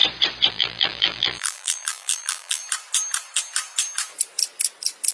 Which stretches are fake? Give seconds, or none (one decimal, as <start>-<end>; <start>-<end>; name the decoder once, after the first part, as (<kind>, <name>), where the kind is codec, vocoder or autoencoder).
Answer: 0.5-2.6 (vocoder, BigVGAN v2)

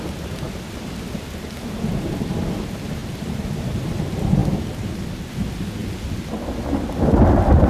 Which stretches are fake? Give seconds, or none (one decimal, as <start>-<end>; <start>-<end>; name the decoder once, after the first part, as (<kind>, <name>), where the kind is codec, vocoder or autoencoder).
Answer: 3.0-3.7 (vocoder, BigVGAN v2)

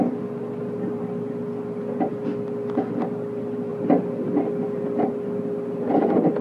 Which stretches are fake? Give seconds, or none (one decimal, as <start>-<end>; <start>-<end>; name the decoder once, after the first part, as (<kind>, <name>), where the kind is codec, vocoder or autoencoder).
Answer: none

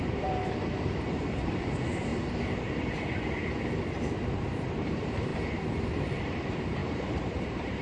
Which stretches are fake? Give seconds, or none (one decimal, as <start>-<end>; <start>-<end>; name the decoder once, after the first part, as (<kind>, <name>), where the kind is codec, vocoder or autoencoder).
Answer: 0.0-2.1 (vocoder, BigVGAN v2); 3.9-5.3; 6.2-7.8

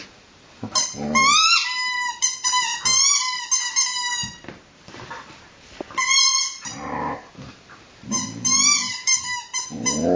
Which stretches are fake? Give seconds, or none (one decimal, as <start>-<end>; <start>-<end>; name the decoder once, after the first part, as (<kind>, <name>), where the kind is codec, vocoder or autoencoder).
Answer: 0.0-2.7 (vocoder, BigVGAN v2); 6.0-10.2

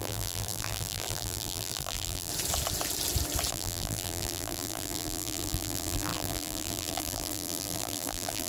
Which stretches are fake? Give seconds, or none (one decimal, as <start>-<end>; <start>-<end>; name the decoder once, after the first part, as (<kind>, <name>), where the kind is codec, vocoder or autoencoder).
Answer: 0.0-2.3 (vocoder, BigVGAN v2); 3.5-8.5